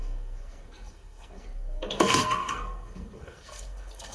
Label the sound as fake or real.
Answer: fake